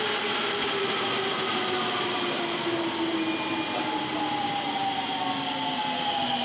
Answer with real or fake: real